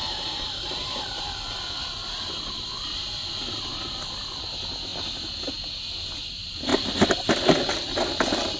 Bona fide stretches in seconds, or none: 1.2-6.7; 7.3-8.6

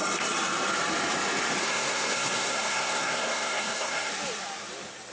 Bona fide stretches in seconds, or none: 0.0-1.6; 4.1-5.1

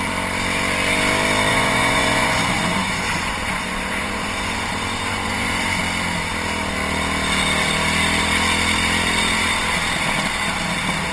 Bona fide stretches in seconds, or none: 0.0-1.5; 5.5-11.1

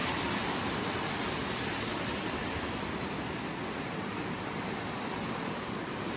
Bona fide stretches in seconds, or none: 0.0-3.7

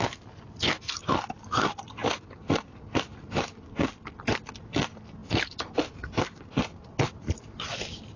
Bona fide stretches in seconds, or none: 0.0-2.0; 4.5-8.2

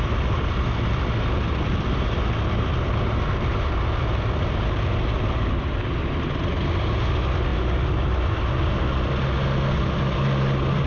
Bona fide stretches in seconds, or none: 0.0-10.9

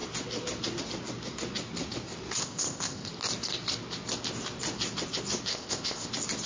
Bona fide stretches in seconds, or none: 0.0-2.4; 3.1-5.5; 6.1-6.5

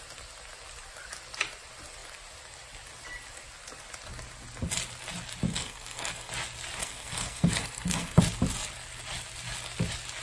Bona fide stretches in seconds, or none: 0.0-5.5; 6.3-6.8; 8.2-10.2